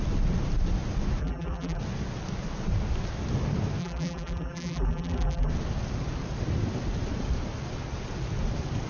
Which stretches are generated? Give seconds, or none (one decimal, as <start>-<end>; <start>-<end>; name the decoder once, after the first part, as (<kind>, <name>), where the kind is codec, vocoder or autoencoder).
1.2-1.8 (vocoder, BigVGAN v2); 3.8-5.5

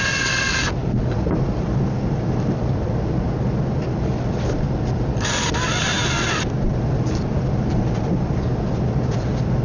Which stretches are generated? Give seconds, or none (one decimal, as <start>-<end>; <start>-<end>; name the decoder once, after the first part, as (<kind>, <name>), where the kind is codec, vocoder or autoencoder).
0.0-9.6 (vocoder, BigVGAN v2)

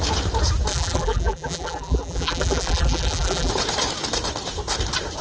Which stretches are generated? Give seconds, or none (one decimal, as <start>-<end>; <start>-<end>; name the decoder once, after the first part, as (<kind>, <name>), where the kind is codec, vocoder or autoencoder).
0.7-3.5 (vocoder, BigVGAN v2)